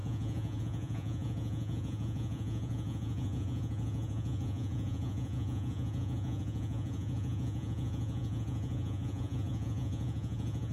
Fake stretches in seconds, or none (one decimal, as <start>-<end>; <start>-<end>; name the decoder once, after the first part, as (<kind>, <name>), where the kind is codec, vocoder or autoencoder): 0.0-10.7 (vocoder, Vocos)